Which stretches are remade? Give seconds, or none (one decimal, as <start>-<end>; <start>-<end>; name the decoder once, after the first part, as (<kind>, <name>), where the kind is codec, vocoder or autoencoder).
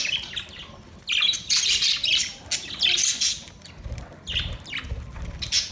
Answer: none